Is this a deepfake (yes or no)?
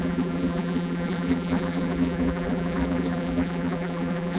yes